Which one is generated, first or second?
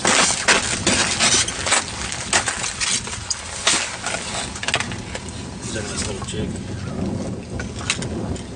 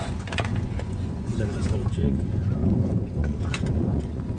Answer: second